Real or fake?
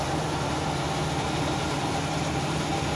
real